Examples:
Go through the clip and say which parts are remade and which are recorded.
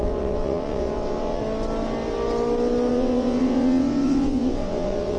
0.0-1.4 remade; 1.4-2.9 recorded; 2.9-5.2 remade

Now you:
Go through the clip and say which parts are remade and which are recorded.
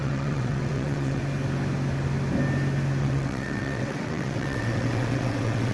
0.0-1.2 remade; 1.2-3.0 recorded; 3.0-5.7 remade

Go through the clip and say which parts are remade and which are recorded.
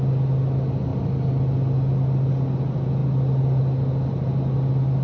0.0-5.0 recorded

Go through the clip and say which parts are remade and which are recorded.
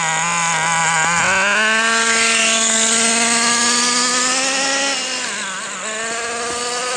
0.0-7.0 recorded